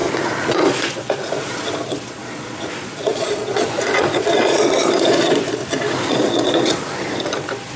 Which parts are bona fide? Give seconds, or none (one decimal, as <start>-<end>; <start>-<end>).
0.0-0.5; 5.6-6.1